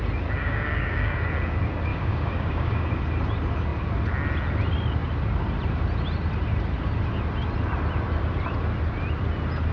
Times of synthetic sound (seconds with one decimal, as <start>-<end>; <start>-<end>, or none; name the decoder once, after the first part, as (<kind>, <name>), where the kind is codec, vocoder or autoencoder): 0.4-1.3 (codec, DAC); 1.9-2.9